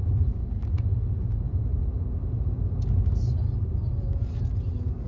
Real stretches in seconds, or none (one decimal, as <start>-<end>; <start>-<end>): 0.0-5.1